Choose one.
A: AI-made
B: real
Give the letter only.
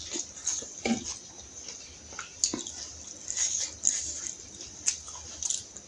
B